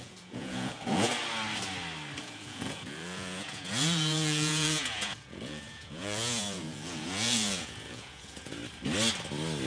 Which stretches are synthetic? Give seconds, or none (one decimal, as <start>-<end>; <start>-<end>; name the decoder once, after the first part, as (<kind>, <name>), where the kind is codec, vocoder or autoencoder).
0.0-1.1 (vocoder, Vocos); 2.2-8.6

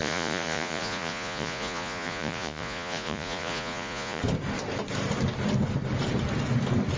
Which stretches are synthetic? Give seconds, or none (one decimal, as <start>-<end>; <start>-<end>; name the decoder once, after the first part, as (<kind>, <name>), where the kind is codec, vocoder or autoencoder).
0.0-4.2 (vocoder, Vocos)

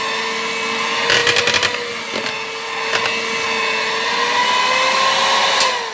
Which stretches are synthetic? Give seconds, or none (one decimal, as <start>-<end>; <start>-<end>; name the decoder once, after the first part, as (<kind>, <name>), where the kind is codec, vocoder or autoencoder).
none

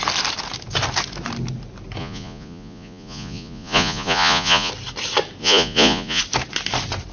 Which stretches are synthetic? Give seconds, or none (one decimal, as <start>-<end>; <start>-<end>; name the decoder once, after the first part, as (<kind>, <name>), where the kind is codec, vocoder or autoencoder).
2.0-4.7 (vocoder, Vocos); 5.4-6.2